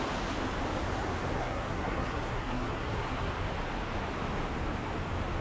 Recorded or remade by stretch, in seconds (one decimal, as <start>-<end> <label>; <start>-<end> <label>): 0.0-1.4 recorded; 1.4-3.3 remade; 3.3-5.4 recorded